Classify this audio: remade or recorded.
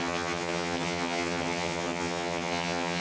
remade